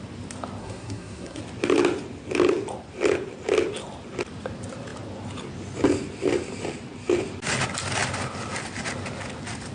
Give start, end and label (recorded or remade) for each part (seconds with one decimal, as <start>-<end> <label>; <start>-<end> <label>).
0.0-0.6 recorded; 0.6-1.4 remade; 1.4-9.7 recorded